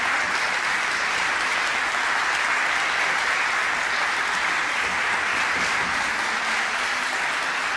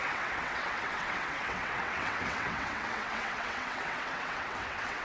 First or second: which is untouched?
first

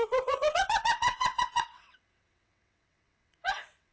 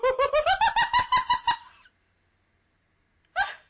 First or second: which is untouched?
second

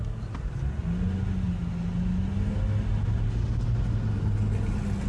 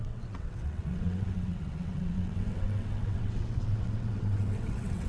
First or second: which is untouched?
first